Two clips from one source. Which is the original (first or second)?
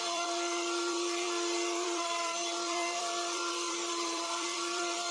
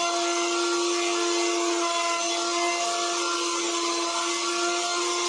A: second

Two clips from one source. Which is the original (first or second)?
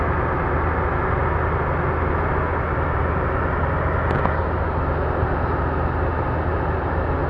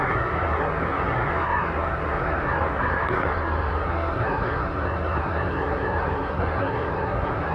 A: first